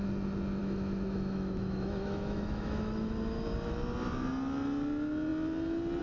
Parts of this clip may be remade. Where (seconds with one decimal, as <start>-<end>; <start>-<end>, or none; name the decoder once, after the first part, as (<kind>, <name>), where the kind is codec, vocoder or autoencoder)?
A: 0.6-3.2 (autoencoder, DAC-VAE)